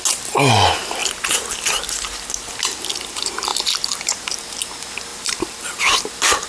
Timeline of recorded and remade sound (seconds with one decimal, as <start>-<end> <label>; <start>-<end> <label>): 0.0-3.5 recorded; 3.5-4.5 remade; 4.5-5.1 recorded; 5.1-5.8 remade; 5.8-6.5 recorded